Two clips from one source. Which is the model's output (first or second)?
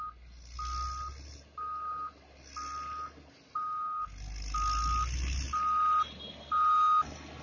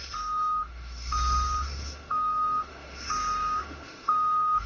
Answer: second